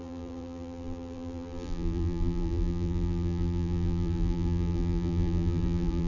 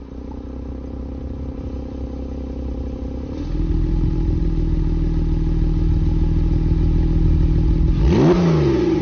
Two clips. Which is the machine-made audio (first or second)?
first